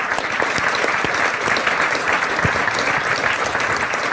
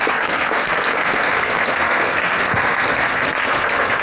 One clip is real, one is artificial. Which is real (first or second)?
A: first